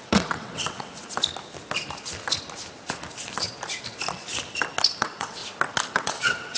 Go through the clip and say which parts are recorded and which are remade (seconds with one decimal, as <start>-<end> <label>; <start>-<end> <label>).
0.0-1.0 remade; 1.0-5.0 recorded; 5.0-5.4 remade; 5.4-5.9 recorded; 5.9-6.6 remade

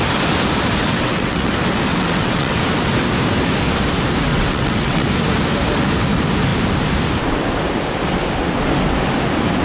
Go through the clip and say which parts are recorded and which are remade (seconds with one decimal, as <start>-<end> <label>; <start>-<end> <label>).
0.0-0.8 recorded; 0.8-1.5 remade; 1.5-1.9 recorded; 1.9-2.6 remade; 2.6-4.3 recorded; 4.3-5.1 remade; 5.1-9.6 recorded

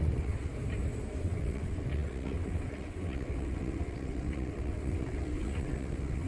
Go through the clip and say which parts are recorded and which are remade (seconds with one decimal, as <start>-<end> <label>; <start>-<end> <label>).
0.0-0.5 remade; 0.5-1.2 recorded; 1.2-6.3 remade